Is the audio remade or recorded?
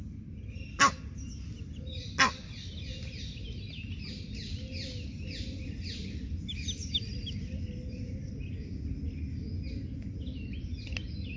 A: recorded